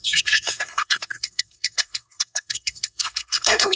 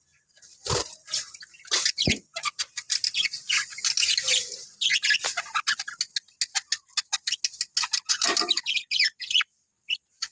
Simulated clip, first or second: first